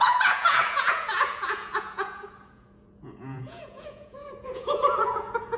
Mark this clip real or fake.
fake